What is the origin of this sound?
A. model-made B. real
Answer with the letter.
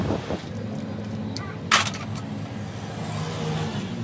B